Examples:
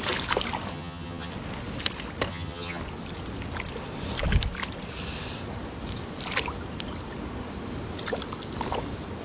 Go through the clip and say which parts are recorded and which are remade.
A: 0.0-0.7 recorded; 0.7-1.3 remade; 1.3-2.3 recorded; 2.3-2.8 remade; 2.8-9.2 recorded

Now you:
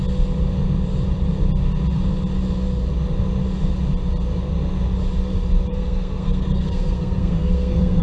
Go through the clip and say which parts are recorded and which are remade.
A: 0.0-5.7 recorded; 5.7-8.0 remade

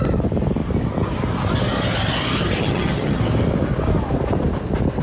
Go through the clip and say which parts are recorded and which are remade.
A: 0.0-2.6 recorded; 2.6-3.2 remade; 3.2-5.0 recorded

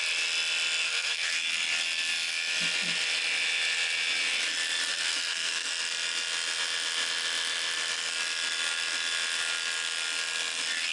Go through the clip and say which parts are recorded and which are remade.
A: 0.0-0.8 recorded; 0.8-1.3 remade; 1.3-4.9 recorded; 4.9-5.7 remade; 5.7-10.9 recorded

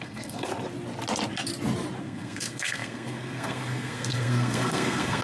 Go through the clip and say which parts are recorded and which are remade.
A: 0.0-0.5 remade; 0.5-2.0 recorded; 2.0-5.2 remade

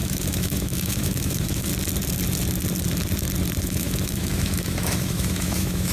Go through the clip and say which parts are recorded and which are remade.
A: 0.0-1.7 remade; 1.7-3.6 recorded; 3.6-5.9 remade

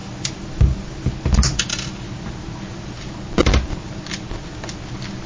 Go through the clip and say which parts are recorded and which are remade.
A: 0.0-1.1 remade; 1.1-5.3 recorded

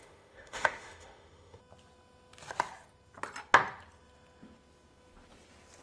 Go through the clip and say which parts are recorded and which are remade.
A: 0.0-1.6 remade; 1.6-5.8 recorded